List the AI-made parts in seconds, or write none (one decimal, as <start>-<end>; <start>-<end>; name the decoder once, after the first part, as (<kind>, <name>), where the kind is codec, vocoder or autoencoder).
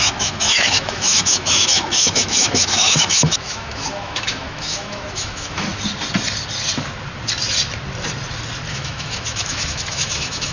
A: 0.0-5.7 (autoencoder, DAC-VAE); 8.7-10.5